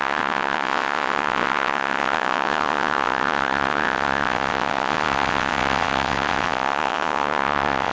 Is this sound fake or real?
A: fake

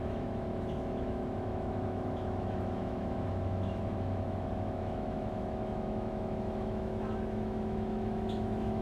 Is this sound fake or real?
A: fake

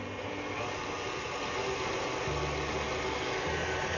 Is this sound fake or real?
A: real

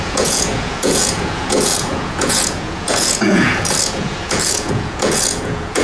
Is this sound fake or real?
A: fake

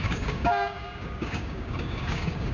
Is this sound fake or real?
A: fake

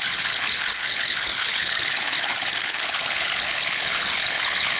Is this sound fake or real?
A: fake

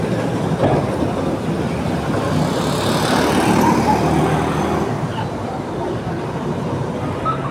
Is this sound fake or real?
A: real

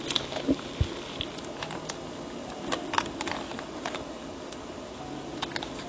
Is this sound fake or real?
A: real